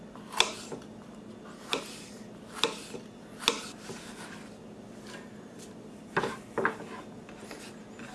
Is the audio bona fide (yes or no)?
yes